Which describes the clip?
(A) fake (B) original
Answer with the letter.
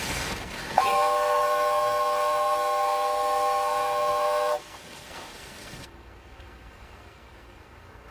A